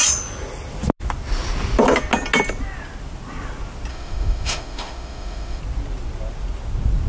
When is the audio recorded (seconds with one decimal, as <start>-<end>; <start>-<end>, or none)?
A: 0.0-3.9; 5.6-7.1